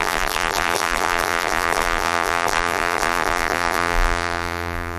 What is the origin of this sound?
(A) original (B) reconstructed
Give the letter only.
B